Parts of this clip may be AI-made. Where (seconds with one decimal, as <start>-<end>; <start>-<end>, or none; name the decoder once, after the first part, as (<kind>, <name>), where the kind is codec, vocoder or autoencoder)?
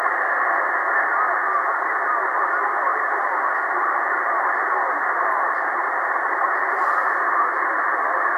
2.9-7.2 (vocoder, BigVGAN v2)